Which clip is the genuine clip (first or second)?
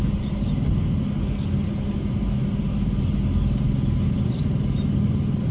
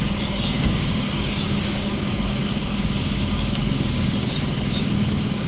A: first